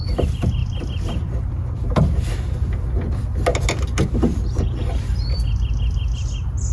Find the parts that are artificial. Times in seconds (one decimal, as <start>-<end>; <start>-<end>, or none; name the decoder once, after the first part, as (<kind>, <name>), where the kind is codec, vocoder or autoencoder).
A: none